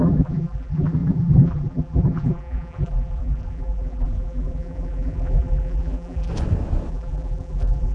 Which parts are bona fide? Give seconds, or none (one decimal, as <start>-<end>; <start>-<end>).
6.3-6.9

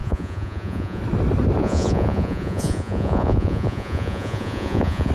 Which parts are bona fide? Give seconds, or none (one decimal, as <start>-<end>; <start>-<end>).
1.0-1.6

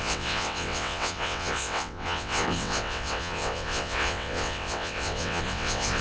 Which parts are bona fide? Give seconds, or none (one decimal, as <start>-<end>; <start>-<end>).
none

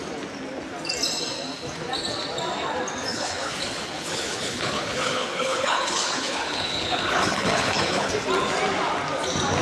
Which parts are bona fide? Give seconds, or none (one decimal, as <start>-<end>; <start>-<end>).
0.0-3.1; 8.1-9.6

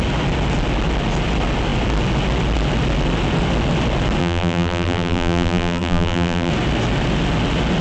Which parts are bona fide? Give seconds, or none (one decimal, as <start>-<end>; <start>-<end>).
0.0-4.2; 6.5-7.8